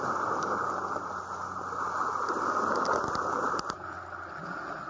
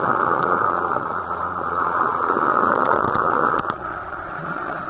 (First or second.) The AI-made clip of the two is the second